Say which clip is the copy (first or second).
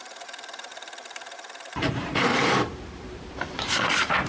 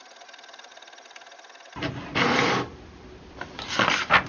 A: first